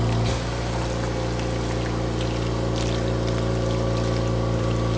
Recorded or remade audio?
recorded